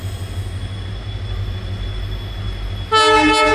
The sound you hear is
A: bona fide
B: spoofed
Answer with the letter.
A